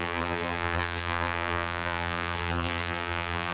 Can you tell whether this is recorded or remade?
remade